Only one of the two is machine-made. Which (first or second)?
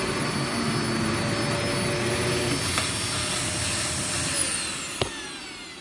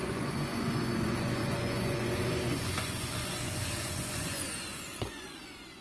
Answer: second